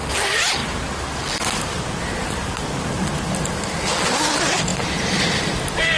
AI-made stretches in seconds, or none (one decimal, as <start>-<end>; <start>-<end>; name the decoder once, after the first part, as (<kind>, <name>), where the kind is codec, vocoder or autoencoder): 4.7-6.0 (vocoder, BigVGAN v2)